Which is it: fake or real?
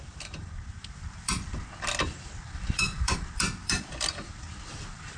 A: fake